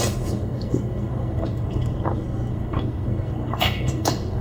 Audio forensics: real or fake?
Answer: fake